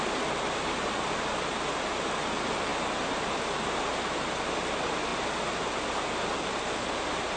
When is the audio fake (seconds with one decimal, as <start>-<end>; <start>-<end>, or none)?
none